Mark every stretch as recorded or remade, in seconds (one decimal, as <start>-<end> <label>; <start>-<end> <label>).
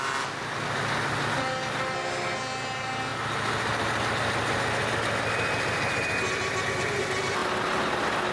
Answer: 0.0-8.3 recorded